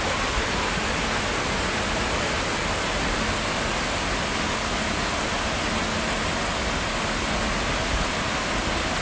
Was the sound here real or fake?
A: real